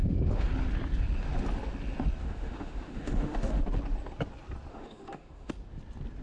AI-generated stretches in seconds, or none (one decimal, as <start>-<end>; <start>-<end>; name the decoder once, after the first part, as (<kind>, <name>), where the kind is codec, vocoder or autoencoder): 0.0-0.5 (autoencoder, DAC-VAE); 2.2-3.6; 4.7-5.5